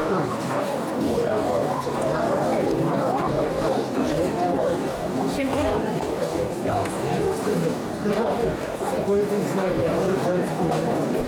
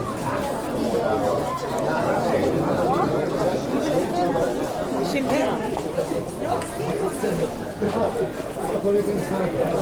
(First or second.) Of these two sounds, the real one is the second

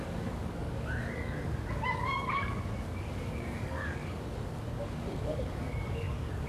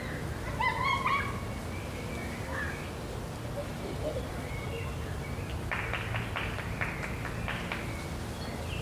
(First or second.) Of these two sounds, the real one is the second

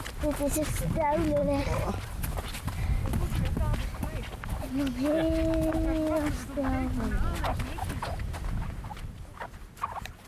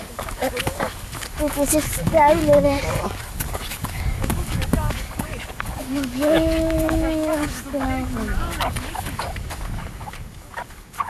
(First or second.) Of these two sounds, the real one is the first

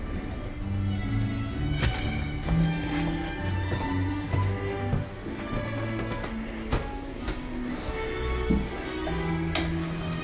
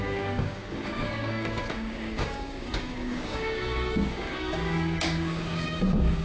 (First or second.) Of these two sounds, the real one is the first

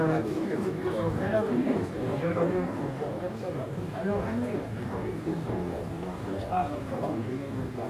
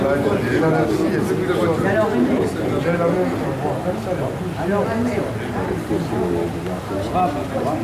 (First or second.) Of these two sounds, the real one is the second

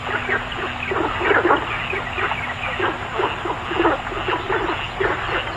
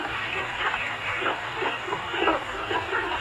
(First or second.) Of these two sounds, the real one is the first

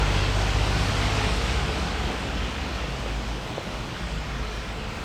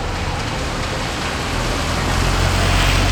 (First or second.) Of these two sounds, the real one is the second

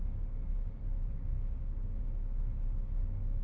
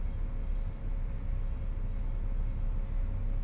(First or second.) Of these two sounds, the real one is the second